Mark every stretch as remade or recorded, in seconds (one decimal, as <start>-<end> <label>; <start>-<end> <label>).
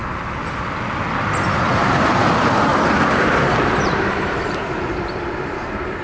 0.0-1.5 recorded; 1.5-6.0 remade